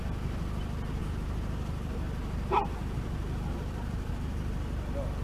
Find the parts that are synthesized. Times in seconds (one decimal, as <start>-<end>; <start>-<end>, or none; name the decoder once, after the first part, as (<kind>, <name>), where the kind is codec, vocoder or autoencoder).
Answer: 1.0-4.1 (vocoder, BigVGAN v2)